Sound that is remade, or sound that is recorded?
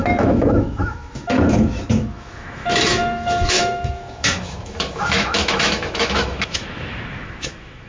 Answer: remade